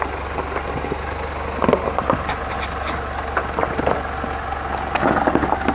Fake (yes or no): no